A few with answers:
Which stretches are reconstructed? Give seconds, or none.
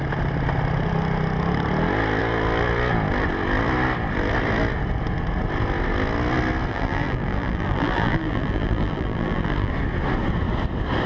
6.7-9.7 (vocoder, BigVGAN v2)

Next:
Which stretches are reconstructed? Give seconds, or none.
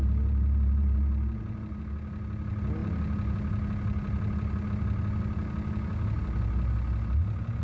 0.0-1.8 (vocoder, BigVGAN v2)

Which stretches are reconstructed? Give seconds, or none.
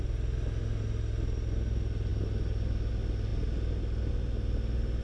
none